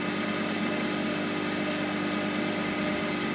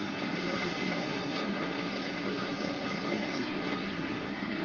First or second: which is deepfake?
second